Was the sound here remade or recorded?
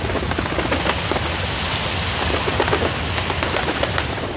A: recorded